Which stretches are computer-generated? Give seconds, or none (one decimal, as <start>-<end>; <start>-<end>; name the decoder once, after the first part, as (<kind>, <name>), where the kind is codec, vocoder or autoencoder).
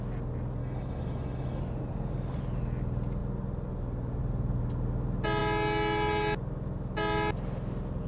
0.6-1.6 (autoencoder, DAC-VAE)